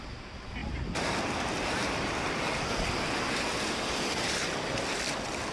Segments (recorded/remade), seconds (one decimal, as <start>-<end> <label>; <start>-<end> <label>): 0.0-0.6 recorded; 0.6-1.2 remade; 1.2-5.5 recorded